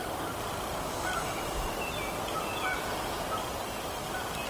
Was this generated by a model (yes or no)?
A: no